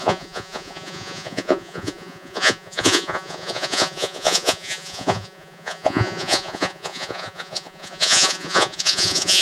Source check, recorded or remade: remade